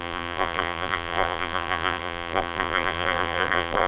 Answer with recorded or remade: remade